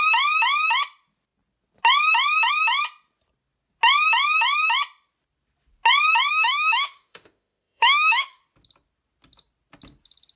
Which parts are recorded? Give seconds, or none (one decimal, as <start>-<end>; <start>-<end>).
0.0-6.3; 8.4-10.4